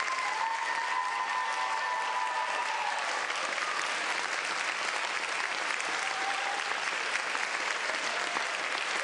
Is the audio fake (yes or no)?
no